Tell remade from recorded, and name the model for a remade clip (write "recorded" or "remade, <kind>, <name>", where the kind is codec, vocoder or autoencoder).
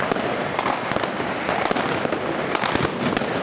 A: recorded